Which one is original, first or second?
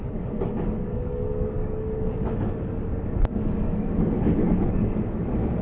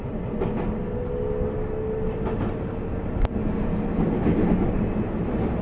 second